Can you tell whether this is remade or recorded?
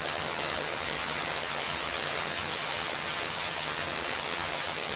remade